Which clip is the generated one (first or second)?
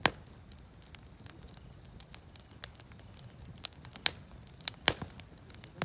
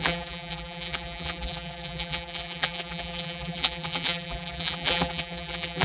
second